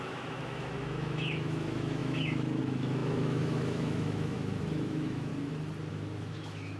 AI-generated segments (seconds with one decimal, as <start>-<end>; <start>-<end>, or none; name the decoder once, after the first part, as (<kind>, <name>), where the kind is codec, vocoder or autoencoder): 0.0-5.3 (autoencoder, DAC-VAE); 5.9-6.8